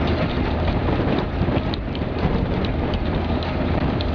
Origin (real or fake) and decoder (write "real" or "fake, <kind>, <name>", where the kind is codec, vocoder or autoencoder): fake, vocoder, BigVGAN v2